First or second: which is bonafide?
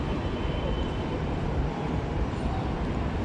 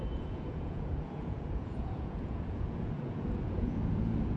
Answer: first